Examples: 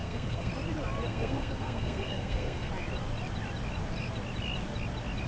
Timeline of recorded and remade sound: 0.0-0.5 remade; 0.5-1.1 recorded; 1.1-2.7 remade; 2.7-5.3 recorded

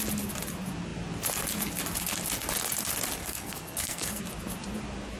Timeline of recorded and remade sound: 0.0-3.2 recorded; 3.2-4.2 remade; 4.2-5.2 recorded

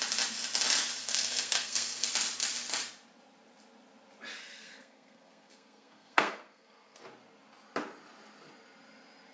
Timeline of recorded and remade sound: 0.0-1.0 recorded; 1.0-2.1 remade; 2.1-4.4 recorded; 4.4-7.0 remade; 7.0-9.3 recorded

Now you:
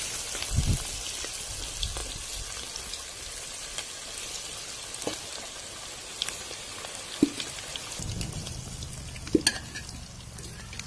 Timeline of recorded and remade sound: 0.0-10.9 recorded

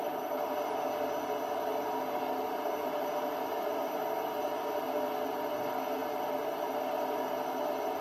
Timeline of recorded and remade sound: 0.0-8.0 recorded